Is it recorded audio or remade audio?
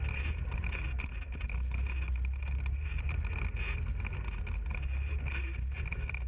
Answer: recorded